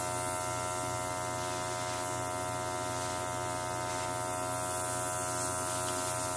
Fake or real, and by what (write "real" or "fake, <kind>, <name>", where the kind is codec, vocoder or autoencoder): real